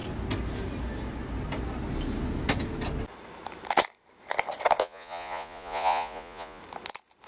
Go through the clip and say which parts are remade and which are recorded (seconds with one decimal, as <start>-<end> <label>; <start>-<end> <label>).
0.0-4.8 recorded; 4.8-6.6 remade; 6.6-7.3 recorded